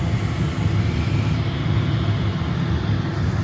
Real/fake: real